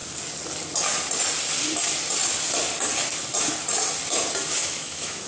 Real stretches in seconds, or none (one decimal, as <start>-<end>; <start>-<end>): 0.0-4.6